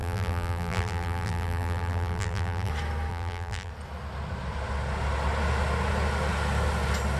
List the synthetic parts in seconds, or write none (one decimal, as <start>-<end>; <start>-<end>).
0.0-2.7; 3.1-3.7